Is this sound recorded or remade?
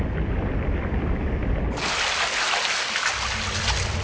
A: recorded